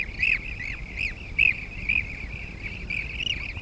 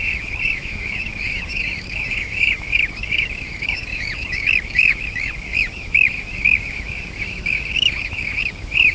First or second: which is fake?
second